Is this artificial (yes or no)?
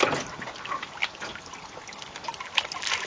no